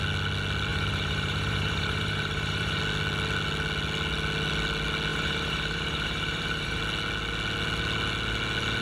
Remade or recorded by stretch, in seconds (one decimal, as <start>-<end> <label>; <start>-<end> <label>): 0.0-0.7 recorded; 0.7-2.8 remade; 2.8-5.1 recorded; 5.1-6.8 remade; 6.8-8.8 recorded